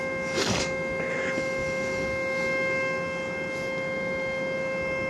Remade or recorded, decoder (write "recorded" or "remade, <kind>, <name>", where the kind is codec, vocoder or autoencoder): recorded